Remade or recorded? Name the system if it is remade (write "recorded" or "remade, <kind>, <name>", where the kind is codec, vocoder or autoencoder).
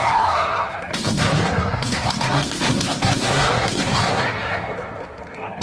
remade, codec, SNAC